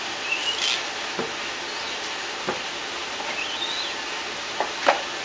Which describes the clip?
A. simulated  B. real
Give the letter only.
B